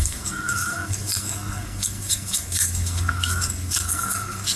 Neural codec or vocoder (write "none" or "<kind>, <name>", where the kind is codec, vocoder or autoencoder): codec, SNAC